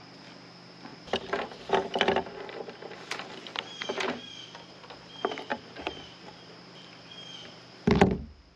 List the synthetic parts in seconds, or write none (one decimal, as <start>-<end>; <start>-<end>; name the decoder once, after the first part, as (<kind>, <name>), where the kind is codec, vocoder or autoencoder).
0.9-1.7 (vocoder, BigVGAN v2); 3.5-4.8; 5.5-7.9